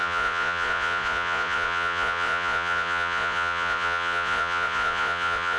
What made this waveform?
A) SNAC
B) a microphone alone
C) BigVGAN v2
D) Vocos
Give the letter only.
D